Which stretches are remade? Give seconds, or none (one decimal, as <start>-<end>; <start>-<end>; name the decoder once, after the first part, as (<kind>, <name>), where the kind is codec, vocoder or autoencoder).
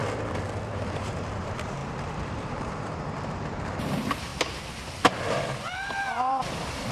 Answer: 0.7-4.3 (vocoder, BigVGAN v2); 5.7-6.9